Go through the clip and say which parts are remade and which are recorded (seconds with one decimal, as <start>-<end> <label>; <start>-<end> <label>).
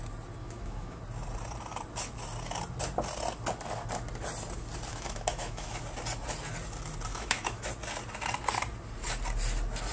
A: 0.0-0.4 recorded; 0.4-1.0 remade; 1.0-4.9 recorded; 4.9-5.8 remade; 5.8-7.1 recorded; 7.1-7.7 remade; 7.7-9.9 recorded